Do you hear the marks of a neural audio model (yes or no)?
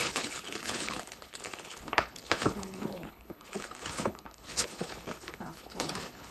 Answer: yes